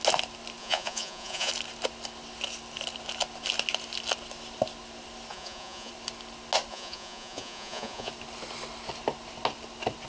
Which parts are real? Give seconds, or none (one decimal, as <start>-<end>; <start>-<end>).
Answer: 0.0-0.6; 1.5-5.3; 5.9-6.7; 8.1-10.1